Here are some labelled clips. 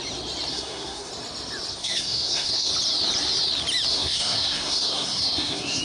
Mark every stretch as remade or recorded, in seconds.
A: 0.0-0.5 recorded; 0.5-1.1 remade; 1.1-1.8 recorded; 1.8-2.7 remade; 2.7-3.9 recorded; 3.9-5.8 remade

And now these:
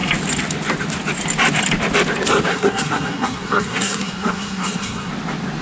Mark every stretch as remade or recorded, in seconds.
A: 0.0-2.5 recorded; 2.5-5.1 remade; 5.1-5.6 recorded

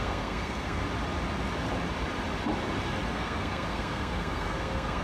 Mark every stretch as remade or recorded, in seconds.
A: 0.0-0.8 remade; 0.8-3.1 recorded; 3.1-5.0 remade

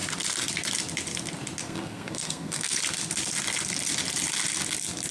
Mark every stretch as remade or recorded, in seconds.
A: 0.0-1.6 recorded; 1.6-2.8 remade; 2.8-5.1 recorded

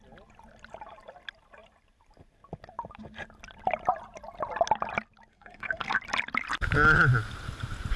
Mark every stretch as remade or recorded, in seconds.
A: 0.0-5.3 recorded; 5.3-6.0 remade; 6.0-8.0 recorded

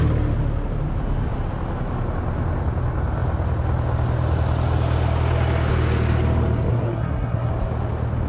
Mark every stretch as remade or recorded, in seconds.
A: 0.0-6.7 recorded; 6.7-7.5 remade; 7.5-8.3 recorded

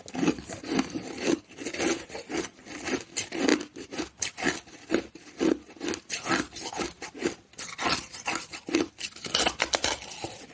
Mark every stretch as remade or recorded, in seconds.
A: 0.0-10.5 recorded